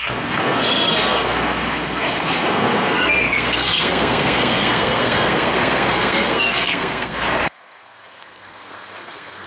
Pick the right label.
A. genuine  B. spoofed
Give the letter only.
B